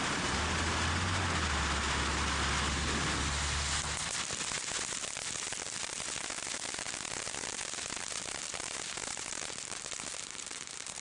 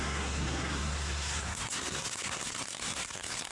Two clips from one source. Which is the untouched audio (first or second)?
first